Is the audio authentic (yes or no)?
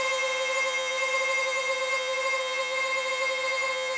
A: no